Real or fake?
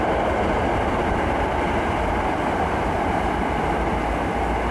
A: real